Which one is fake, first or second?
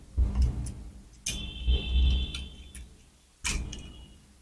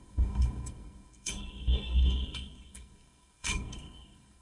second